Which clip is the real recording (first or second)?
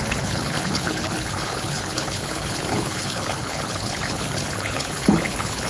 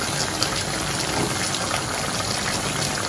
second